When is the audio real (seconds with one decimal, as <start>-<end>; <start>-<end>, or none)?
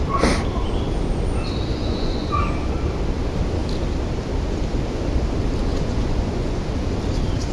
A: 0.0-1.7; 2.4-5.7; 6.6-7.5